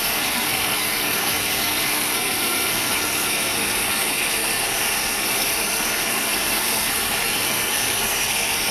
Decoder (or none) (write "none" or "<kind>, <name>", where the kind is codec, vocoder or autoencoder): codec, SNAC